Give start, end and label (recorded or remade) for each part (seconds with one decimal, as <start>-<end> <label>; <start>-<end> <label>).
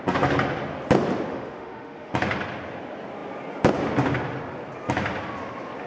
0.0-1.3 recorded; 1.3-2.1 remade; 2.1-5.9 recorded